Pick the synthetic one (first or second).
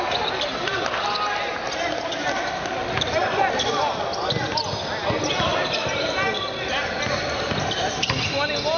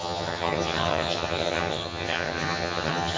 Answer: second